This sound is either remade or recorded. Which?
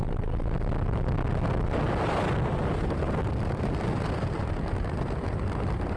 recorded